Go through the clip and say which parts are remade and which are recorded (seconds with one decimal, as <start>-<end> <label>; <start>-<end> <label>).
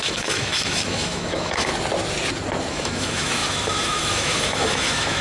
0.0-1.7 remade; 1.7-2.7 recorded; 2.7-5.2 remade